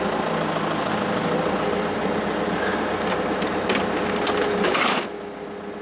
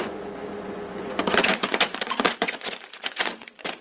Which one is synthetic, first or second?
second